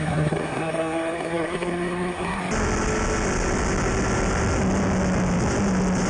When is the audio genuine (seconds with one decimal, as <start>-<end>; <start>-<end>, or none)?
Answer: 2.4-6.1